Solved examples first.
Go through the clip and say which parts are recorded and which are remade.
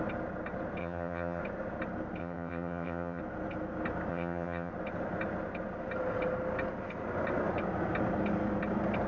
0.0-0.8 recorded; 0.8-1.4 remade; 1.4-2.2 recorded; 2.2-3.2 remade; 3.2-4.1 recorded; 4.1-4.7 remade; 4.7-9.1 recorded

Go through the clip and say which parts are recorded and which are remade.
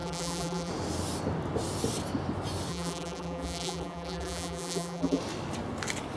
0.0-0.7 remade; 0.7-2.7 recorded; 2.7-5.2 remade; 5.2-6.2 recorded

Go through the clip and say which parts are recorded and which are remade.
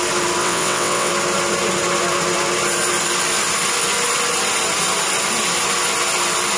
0.0-0.4 recorded; 0.4-1.1 remade; 1.1-6.6 recorded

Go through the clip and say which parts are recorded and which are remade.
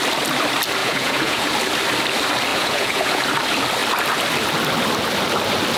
0.0-0.8 recorded; 0.8-1.5 remade; 1.5-2.5 recorded; 2.5-3.2 remade; 3.2-5.8 recorded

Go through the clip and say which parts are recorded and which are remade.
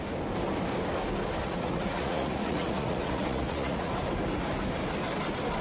0.0-1.4 recorded; 1.4-3.9 remade; 3.9-5.6 recorded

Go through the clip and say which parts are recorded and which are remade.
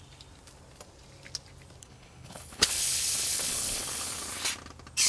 0.0-1.8 recorded; 1.8-4.2 remade; 4.2-5.1 recorded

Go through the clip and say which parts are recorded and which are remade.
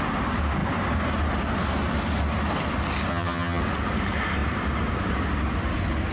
0.0-3.1 recorded; 3.1-3.6 remade; 3.6-6.1 recorded